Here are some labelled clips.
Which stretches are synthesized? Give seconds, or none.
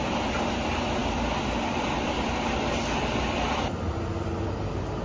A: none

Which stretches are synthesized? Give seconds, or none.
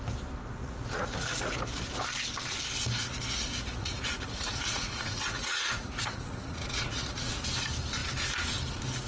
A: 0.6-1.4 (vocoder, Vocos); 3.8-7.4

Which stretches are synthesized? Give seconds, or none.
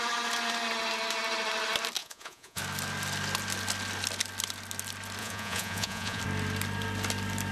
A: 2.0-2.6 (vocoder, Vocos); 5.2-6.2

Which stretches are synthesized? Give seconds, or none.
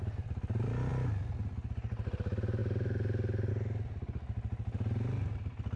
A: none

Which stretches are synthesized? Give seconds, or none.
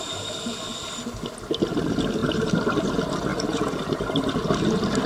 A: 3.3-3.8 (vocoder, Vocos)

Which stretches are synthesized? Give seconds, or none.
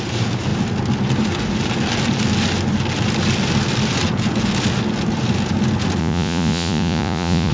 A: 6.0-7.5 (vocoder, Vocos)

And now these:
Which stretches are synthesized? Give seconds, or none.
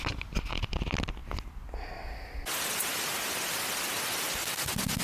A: none